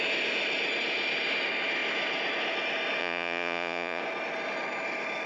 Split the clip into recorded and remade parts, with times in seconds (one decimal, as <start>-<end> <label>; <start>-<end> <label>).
0.0-3.0 recorded; 3.0-4.0 remade; 4.0-5.3 recorded